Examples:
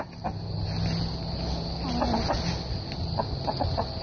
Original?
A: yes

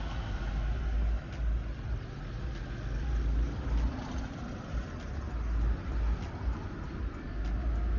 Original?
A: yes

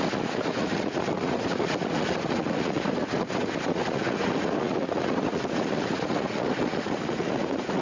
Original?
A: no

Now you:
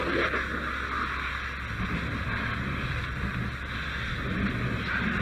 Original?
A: yes